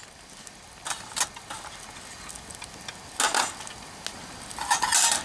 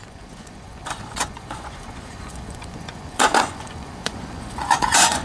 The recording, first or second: first